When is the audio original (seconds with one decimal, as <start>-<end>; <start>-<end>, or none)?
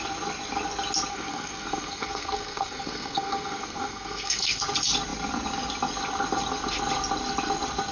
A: 0.0-1.1; 4.6-7.9